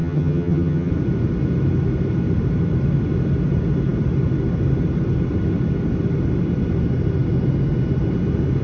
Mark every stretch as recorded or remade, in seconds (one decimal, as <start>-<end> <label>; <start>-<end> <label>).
0.0-0.9 remade; 0.9-8.6 recorded